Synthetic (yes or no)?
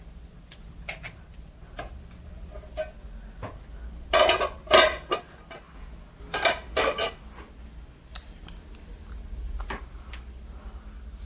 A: no